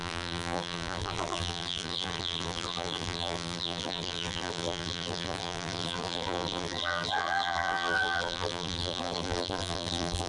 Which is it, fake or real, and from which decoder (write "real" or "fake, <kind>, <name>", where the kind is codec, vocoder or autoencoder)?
fake, vocoder, BigVGAN v2